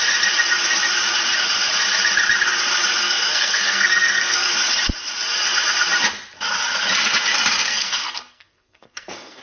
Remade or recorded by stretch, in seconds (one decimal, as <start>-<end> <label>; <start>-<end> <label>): 0.0-3.0 recorded; 3.0-4.5 remade; 4.5-7.6 recorded; 7.6-9.4 remade